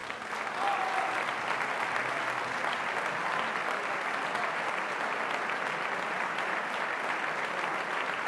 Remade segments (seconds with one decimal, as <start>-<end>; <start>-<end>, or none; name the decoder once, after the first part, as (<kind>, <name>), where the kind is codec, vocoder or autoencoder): none